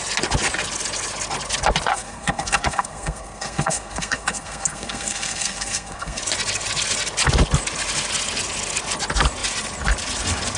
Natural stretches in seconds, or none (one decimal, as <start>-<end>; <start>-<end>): 0.0-1.9; 6.2-10.6